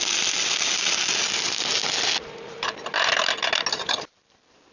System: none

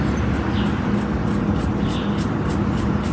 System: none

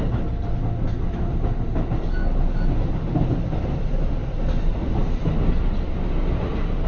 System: none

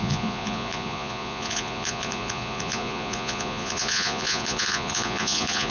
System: vocoder, Vocos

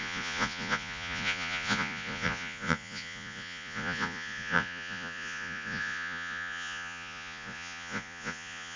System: vocoder, Vocos